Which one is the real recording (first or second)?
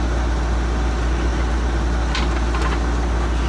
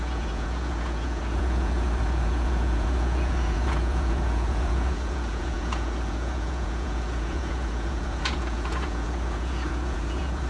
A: first